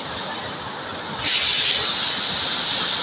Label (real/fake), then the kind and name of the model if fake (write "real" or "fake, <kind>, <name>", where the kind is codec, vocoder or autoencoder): real